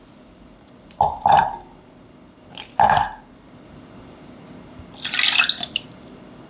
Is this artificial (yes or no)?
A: no